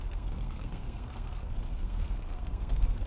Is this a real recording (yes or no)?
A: no